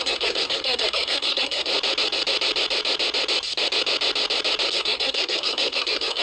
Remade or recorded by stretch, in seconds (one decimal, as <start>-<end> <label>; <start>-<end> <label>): 0.0-1.7 remade; 1.7-4.7 recorded; 4.7-6.2 remade